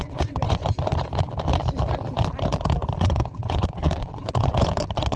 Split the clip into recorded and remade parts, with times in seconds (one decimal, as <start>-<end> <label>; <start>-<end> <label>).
0.0-0.6 remade; 0.6-3.0 recorded; 3.0-5.2 remade